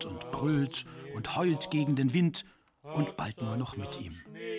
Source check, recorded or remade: recorded